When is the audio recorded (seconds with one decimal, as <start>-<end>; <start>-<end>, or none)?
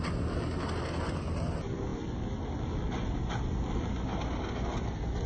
0.0-5.3